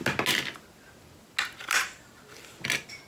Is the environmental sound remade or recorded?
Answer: recorded